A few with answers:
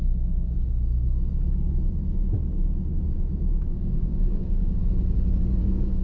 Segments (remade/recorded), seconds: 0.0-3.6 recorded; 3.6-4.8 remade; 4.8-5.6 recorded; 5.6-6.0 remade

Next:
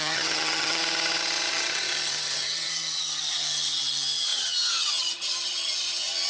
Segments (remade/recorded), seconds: 0.0-0.8 remade; 0.8-1.5 recorded; 1.5-6.3 remade

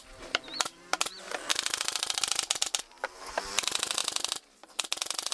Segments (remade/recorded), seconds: 0.0-1.5 remade; 1.5-2.8 recorded; 2.8-4.0 remade; 4.0-5.3 recorded

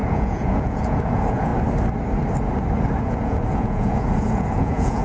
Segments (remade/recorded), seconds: 0.0-1.5 remade; 1.5-3.0 recorded; 3.0-5.0 remade

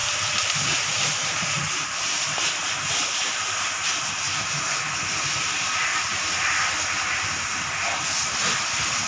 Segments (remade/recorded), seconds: 0.0-4.6 remade; 4.6-9.1 recorded